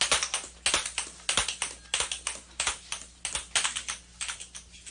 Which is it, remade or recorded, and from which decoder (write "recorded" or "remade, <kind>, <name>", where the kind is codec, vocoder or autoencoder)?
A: recorded